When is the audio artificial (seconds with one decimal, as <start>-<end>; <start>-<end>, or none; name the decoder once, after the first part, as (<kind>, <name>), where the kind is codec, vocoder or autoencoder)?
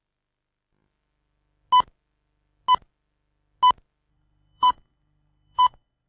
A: 4.1-6.1 (codec, SNAC)